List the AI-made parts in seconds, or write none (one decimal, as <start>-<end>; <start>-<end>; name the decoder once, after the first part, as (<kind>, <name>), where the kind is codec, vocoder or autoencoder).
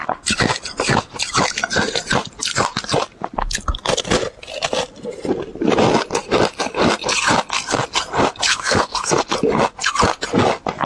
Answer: 8.5-9.1 (codec, SNAC)